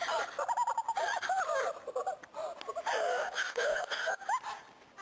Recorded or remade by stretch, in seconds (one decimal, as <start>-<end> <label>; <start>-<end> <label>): 0.0-3.1 recorded; 3.1-4.2 remade; 4.2-5.0 recorded